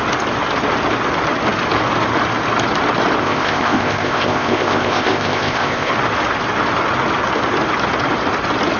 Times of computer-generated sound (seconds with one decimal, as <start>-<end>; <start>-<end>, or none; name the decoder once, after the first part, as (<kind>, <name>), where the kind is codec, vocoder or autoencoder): 3.2-5.9 (codec, ZipCodec)